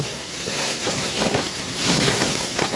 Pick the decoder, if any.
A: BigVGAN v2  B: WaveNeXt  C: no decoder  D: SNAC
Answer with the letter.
D